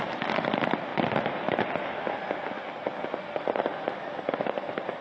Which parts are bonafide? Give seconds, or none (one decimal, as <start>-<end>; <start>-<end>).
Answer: 0.0-5.0